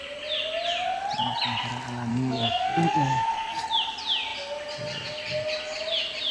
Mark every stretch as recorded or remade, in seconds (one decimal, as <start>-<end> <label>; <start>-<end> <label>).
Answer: 0.0-2.1 recorded; 2.1-3.6 remade; 3.6-6.3 recorded